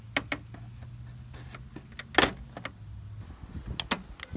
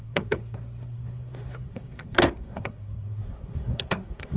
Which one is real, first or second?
first